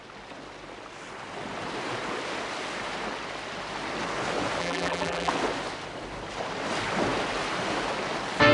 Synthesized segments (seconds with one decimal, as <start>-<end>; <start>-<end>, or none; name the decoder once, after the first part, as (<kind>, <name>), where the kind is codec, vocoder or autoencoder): 4.6-5.3 (vocoder, BigVGAN v2)

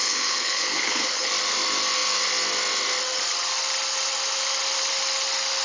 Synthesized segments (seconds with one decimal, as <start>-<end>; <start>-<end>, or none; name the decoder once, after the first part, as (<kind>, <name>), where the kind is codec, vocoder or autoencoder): 0.0-1.3 (codec, HILCodec)

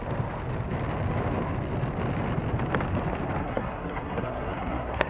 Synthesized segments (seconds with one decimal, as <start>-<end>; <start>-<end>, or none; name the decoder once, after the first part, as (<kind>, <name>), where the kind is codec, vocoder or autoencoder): 3.4-5.1 (codec, SNAC)

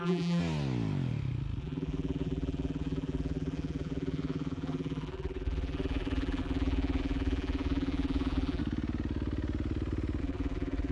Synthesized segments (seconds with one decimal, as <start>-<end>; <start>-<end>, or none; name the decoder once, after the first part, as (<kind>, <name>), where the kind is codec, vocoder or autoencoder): 0.0-0.4 (vocoder, BigVGAN v2); 1.6-8.6; 10.2-10.9

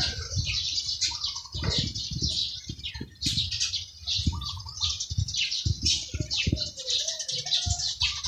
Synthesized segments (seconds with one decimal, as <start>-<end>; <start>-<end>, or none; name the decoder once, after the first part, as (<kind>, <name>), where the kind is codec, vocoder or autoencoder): none

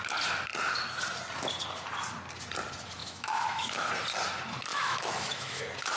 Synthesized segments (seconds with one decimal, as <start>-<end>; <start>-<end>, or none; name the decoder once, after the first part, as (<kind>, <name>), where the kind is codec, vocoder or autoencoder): 3.0-3.9 (autoencoder, DAC-VAE); 4.7-5.6

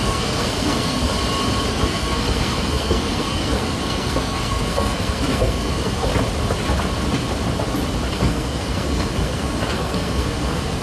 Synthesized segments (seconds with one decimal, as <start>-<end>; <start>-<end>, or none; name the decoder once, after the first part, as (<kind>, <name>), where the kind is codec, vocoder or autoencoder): 0.0-1.1 (codec, SNAC); 1.7-6.1; 8.1-10.8